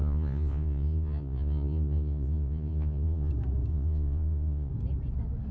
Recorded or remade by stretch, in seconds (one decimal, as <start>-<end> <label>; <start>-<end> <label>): 0.0-3.3 remade; 3.3-3.7 recorded; 3.7-4.7 remade; 4.7-5.5 recorded